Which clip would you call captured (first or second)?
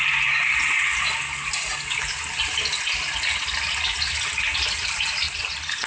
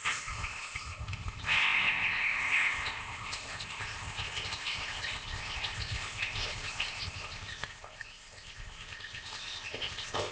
first